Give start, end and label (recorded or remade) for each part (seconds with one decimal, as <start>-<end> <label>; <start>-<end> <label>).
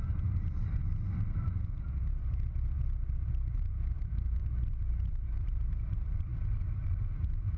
0.0-4.4 remade; 4.4-4.9 recorded; 4.9-7.6 remade